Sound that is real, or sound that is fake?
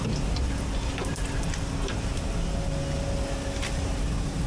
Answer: real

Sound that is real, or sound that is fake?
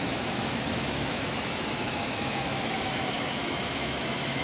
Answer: fake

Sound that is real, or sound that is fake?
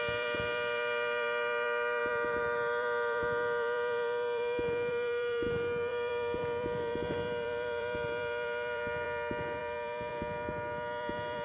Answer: fake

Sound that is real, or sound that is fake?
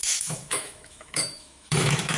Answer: fake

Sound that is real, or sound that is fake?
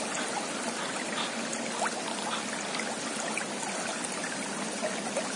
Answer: real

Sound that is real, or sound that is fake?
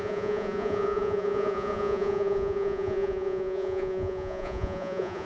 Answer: fake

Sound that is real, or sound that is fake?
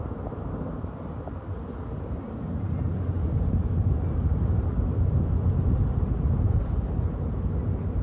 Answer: real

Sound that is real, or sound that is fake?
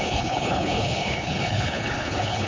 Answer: fake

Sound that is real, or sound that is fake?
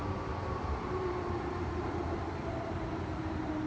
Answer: fake